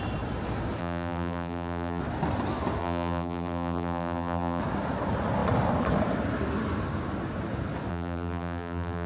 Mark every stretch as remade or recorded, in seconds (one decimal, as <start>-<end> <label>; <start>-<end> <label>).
0.0-0.8 recorded; 0.8-2.0 remade; 2.0-2.8 recorded; 2.8-4.6 remade; 4.6-7.9 recorded; 7.9-9.1 remade